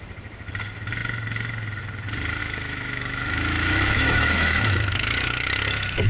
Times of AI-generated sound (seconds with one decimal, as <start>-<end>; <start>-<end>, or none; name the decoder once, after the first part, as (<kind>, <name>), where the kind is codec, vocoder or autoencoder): 2.4-6.1 (autoencoder, DAC-VAE)